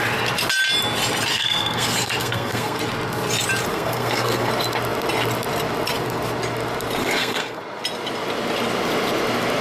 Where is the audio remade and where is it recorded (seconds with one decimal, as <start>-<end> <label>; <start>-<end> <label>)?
0.0-1.3 recorded; 1.3-2.8 remade; 2.8-3.7 recorded; 3.7-4.5 remade; 4.5-7.0 recorded; 7.0-7.6 remade; 7.6-9.6 recorded